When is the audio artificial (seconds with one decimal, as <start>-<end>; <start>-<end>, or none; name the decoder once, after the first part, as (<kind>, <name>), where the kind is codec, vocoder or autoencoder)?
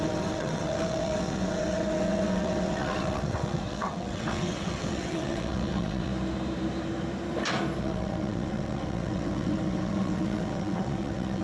0.0-6.1 (vocoder, WaveNeXt); 7.8-11.4